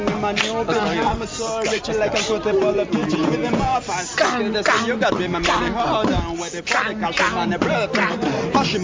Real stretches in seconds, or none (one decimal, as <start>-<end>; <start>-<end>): 0.0-3.2; 3.8-8.8